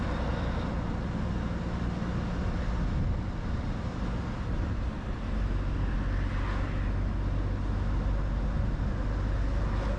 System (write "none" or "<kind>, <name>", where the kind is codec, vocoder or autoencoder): none